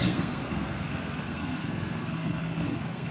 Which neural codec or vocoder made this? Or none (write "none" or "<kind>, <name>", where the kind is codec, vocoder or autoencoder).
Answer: codec, SNAC